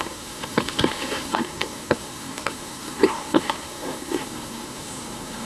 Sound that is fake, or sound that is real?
fake